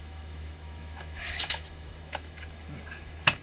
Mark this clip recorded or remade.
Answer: remade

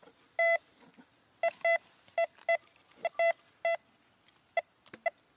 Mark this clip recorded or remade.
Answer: recorded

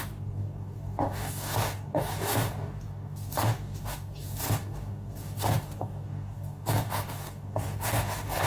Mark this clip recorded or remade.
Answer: remade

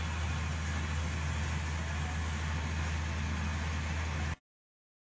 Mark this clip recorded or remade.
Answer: recorded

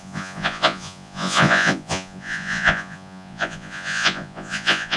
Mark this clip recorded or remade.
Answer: remade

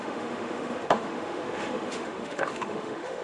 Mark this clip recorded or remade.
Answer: remade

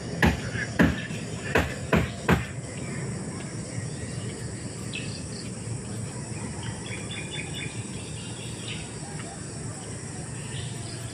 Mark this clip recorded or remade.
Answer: recorded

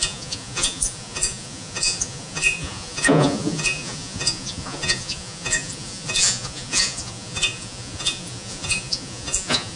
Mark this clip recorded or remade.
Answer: remade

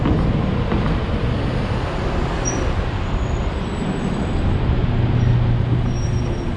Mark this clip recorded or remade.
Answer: recorded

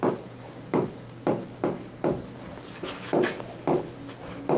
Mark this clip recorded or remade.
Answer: recorded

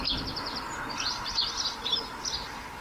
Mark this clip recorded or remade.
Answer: recorded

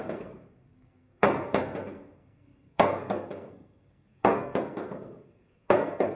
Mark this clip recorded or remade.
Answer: remade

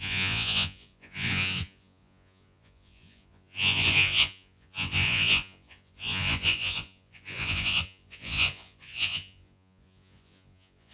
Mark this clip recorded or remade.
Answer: remade